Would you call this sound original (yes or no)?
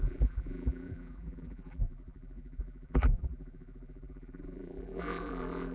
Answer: no